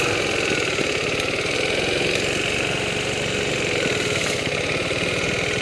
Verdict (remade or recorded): recorded